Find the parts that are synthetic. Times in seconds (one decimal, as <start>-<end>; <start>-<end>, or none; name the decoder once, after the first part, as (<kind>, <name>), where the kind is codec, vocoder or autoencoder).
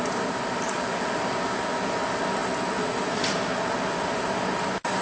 none